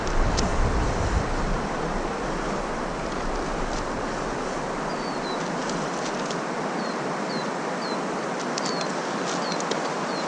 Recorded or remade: recorded